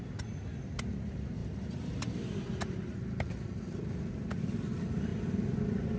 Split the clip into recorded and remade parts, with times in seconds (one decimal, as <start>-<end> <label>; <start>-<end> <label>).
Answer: 0.0-1.4 recorded; 1.4-2.4 remade; 2.4-6.0 recorded

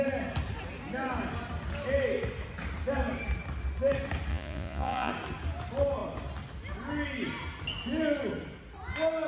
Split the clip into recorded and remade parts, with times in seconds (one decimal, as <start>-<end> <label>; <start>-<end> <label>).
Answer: 0.0-4.3 recorded; 4.3-5.1 remade; 5.1-9.3 recorded

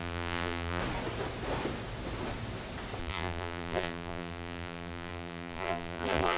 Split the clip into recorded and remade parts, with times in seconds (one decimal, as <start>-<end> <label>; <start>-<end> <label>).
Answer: 0.0-0.8 remade; 0.8-3.0 recorded; 3.0-6.4 remade

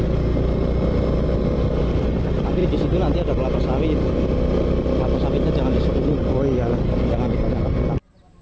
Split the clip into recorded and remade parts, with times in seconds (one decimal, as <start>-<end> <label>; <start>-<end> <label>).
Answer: 0.0-8.4 recorded

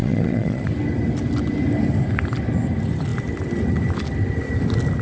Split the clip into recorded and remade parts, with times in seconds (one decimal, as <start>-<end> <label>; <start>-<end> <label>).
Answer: 0.0-0.7 remade; 0.7-5.0 recorded